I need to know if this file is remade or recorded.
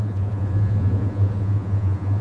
remade